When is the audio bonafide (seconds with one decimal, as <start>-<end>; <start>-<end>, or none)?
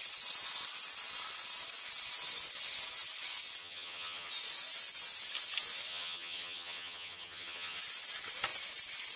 0.0-3.6; 4.3-5.9; 7.8-9.2